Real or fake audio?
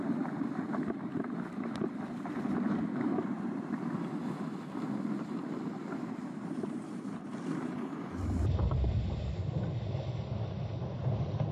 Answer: fake